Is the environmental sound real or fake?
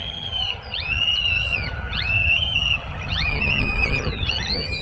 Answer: fake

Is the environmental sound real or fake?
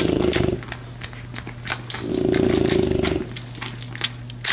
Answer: real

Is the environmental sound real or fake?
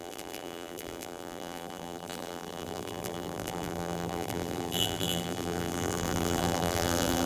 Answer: fake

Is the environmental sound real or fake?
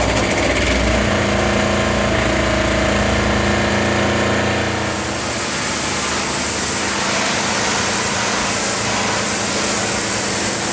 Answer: real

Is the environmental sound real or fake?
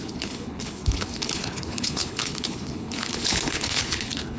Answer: fake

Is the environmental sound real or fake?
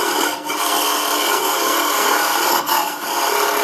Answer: fake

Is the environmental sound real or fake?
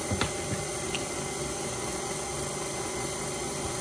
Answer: real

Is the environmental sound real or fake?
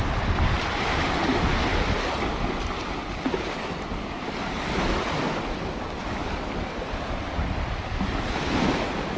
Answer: real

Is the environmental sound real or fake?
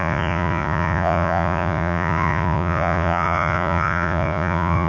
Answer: fake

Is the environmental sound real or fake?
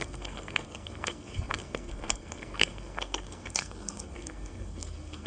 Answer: fake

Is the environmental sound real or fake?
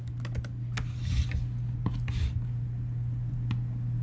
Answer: real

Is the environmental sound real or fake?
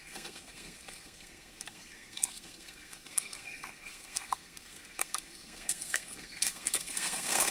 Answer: fake